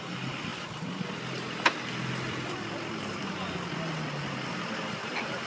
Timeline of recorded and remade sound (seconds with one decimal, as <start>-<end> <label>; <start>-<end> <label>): 0.0-5.5 recorded